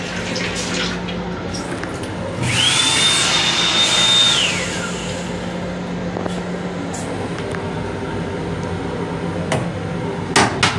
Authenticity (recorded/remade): recorded